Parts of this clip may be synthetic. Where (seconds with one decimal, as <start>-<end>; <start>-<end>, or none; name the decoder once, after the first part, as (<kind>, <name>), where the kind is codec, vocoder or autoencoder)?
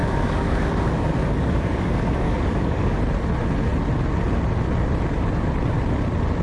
0.0-3.0 (codec, DAC)